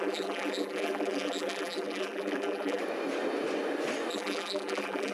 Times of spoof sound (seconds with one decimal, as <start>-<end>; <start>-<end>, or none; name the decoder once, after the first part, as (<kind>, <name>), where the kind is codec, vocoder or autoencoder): 0.0-2.8 (vocoder, BigVGAN v2); 4.1-5.1